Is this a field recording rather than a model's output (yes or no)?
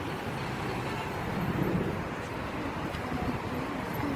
yes